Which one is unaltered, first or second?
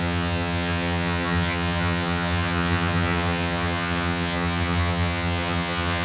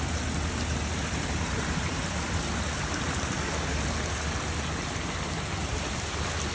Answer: second